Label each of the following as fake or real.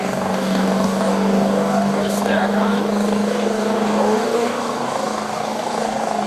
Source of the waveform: fake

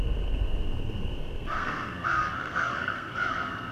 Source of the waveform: fake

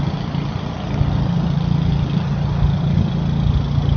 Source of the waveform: real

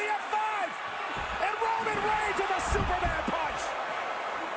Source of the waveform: real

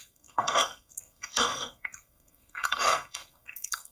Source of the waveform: fake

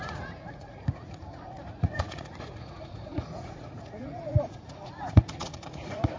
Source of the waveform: fake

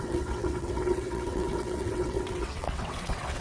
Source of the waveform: fake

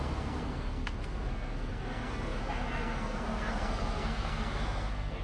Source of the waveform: fake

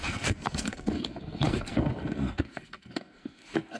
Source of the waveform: fake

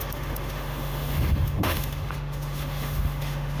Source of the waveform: fake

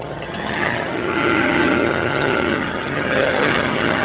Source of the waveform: fake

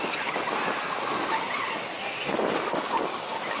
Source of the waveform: real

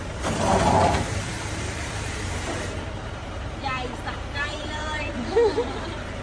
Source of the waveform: fake